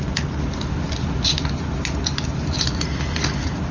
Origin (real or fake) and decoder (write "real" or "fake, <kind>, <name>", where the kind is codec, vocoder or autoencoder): real